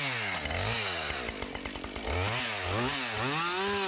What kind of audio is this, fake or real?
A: real